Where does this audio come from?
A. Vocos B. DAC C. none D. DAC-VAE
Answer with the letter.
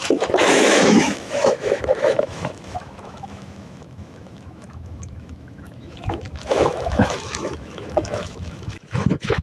D